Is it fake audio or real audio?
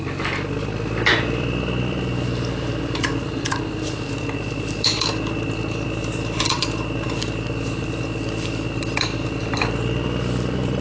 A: fake